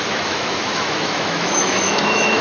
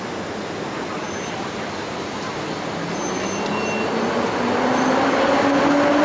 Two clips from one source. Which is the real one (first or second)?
second